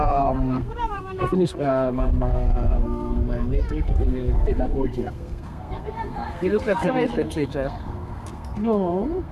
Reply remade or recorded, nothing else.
remade